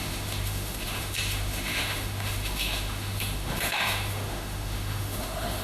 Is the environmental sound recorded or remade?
remade